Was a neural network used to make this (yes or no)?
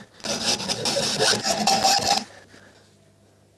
no